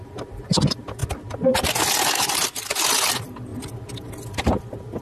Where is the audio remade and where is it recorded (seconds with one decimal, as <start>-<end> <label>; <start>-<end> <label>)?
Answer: 0.0-1.0 remade; 1.0-1.5 recorded; 1.5-3.5 remade; 3.5-4.4 recorded; 4.4-5.0 remade